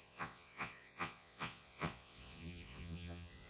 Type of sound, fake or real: fake